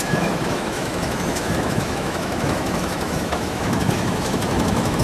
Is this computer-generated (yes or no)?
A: yes